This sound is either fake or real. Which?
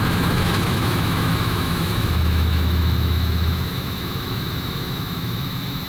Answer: fake